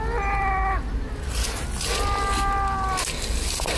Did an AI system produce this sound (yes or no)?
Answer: no